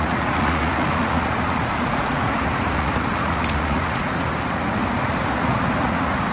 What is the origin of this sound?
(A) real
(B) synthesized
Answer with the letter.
B